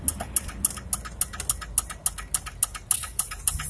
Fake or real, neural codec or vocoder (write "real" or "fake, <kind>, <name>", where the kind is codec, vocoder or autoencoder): real